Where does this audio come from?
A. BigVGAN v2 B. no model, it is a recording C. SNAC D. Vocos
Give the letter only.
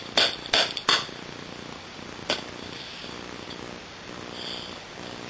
B